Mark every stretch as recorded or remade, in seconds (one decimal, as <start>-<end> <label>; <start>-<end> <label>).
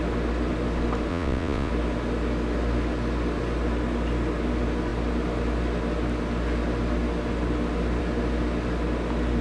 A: 0.0-1.1 recorded; 1.1-1.7 remade; 1.7-9.4 recorded